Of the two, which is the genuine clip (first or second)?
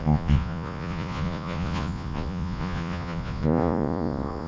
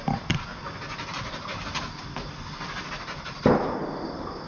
second